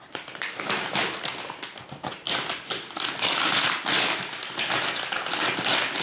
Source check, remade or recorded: recorded